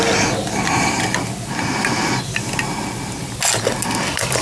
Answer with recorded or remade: recorded